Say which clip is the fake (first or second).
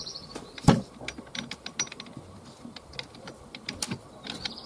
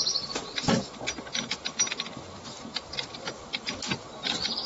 first